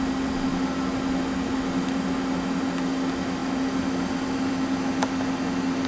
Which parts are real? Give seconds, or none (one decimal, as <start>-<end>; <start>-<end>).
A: 0.0-5.9